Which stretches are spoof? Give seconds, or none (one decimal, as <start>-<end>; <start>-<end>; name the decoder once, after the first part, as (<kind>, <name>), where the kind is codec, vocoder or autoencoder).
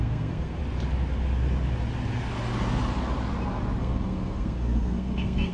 0.0-0.6 (codec, SNAC); 3.8-5.5